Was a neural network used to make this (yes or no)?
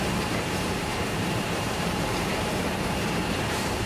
yes